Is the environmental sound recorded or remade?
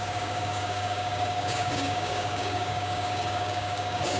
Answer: remade